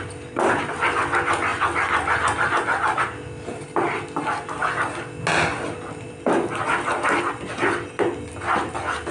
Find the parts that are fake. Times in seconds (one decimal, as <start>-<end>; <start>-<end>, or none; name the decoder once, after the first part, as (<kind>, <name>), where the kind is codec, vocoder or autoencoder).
none

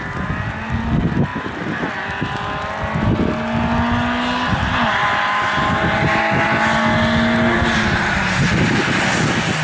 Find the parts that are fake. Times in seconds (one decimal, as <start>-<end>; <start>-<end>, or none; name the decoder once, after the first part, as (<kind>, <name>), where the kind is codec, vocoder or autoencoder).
5.0-6.2 (vocoder, BigVGAN v2)

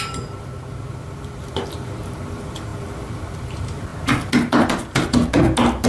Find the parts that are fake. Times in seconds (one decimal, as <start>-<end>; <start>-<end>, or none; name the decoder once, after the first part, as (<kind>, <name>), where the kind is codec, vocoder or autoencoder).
0.0-3.9 (vocoder, BigVGAN v2); 4.6-5.2

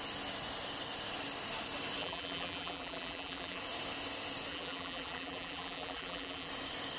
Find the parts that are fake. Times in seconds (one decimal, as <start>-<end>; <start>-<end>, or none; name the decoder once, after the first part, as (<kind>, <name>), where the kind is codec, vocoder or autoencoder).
2.0-3.6 (vocoder, BigVGAN v2); 4.5-6.5

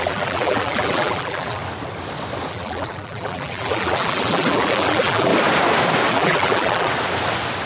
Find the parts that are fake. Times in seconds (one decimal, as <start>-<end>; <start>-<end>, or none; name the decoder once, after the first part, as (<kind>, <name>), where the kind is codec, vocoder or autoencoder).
0.0-1.6 (vocoder, BigVGAN v2); 2.5-5.3; 6.1-6.9

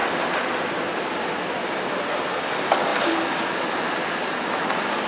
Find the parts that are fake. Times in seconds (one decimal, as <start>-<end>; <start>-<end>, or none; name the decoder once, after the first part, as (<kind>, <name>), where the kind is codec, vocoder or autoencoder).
0.0-1.3 (vocoder, BigVGAN v2); 2.9-4.4

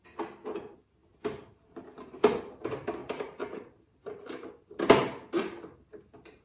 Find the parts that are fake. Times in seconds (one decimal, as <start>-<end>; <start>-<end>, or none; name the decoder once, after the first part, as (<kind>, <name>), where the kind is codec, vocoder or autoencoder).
3.0-4.5 (vocoder, BigVGAN v2)